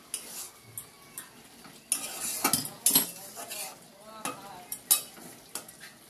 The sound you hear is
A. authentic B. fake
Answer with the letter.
A